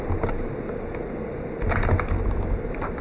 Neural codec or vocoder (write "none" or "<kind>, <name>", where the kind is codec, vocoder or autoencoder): none